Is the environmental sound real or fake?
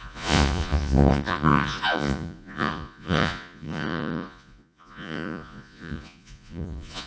fake